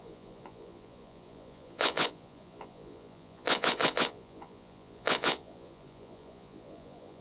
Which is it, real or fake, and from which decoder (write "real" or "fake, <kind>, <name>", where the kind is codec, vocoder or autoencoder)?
fake, vocoder, Vocos